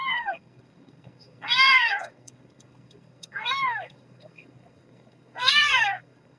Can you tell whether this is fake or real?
fake